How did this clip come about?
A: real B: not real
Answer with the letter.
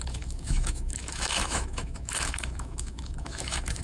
B